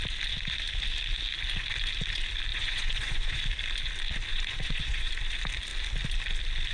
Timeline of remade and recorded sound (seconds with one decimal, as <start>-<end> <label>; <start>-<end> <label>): 0.0-2.5 recorded; 2.5-3.4 remade; 3.4-4.3 recorded; 4.3-5.1 remade; 5.1-6.7 recorded